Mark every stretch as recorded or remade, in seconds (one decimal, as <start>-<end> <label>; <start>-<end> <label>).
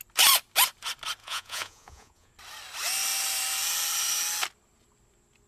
0.0-1.2 recorded; 1.2-2.3 remade; 2.3-5.5 recorded